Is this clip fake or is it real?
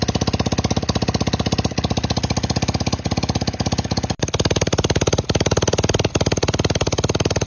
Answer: real